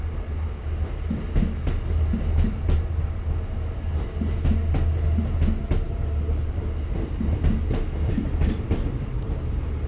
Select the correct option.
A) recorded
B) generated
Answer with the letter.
A